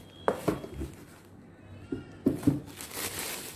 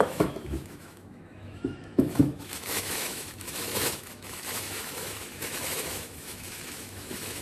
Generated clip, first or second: second